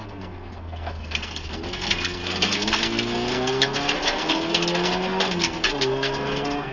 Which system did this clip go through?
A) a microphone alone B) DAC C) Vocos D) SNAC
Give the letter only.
D